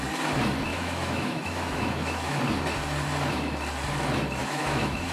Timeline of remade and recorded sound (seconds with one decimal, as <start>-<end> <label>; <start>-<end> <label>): 0.0-0.7 recorded; 0.7-2.4 remade; 2.4-4.4 recorded; 4.4-5.1 remade